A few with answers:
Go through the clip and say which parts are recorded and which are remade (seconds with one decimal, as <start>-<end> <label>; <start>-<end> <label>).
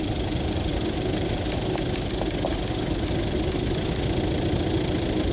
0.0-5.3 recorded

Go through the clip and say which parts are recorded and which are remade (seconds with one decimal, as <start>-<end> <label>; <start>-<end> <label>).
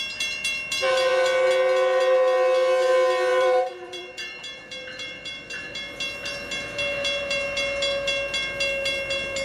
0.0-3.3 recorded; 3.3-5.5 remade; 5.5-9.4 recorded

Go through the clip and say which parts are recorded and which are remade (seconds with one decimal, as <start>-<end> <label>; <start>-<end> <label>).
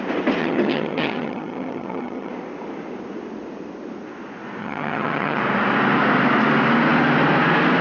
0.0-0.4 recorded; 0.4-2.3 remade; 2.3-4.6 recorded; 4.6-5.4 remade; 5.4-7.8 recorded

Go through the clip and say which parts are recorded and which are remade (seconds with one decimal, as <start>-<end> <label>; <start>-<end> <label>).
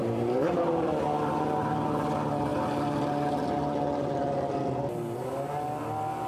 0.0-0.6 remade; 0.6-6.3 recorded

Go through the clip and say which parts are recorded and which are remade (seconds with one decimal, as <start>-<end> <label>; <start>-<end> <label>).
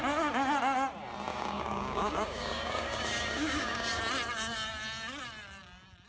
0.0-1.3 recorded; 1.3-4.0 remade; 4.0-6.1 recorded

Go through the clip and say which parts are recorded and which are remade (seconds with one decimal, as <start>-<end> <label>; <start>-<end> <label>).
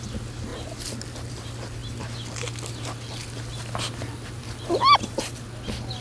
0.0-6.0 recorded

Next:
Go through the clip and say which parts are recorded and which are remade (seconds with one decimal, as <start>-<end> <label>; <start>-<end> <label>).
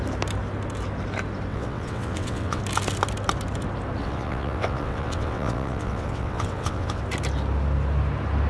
0.0-1.5 recorded; 1.5-2.6 remade; 2.6-4.0 recorded; 4.0-7.0 remade; 7.0-8.5 recorded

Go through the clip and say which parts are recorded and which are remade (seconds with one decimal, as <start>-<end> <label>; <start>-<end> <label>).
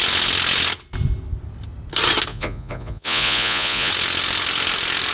0.0-2.3 recorded; 2.3-3.9 remade; 3.9-5.1 recorded